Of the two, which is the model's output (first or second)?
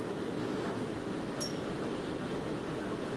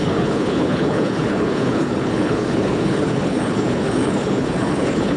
second